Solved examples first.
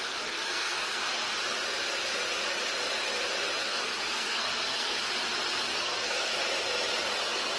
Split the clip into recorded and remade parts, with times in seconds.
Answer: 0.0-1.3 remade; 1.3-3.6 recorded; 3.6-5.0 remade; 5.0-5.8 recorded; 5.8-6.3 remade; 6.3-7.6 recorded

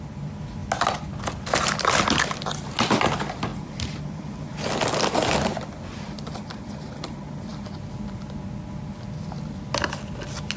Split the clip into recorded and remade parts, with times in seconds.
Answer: 0.0-10.6 recorded

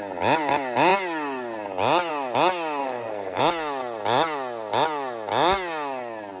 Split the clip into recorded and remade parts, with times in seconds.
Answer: 0.0-2.8 recorded; 2.8-3.4 remade; 3.4-6.4 recorded

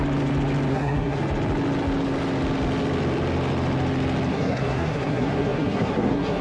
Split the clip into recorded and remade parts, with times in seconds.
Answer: 0.0-0.7 recorded; 0.7-1.2 remade; 1.2-4.3 recorded; 4.3-6.4 remade

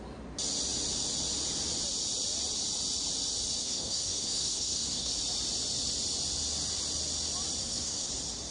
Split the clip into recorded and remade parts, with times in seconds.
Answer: 0.0-3.6 recorded; 3.6-5.1 remade; 5.1-7.6 recorded; 7.6-8.1 remade; 8.1-8.5 recorded

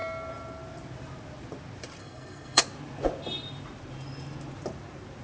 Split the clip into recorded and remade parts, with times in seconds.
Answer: 0.0-2.0 recorded; 2.0-2.6 remade; 2.6-5.2 recorded

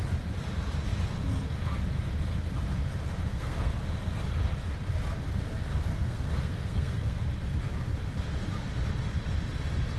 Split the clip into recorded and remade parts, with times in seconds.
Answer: 0.0-3.3 recorded; 3.3-3.8 remade; 3.8-5.9 recorded; 5.9-7.2 remade; 7.2-10.0 recorded